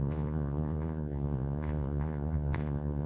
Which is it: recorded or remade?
remade